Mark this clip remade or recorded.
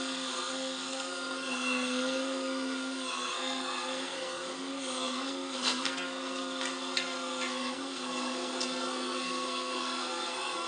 remade